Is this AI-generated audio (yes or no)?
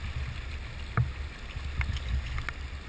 no